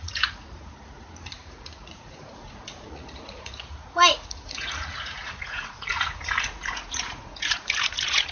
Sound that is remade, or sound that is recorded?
remade